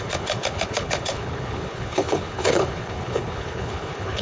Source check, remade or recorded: remade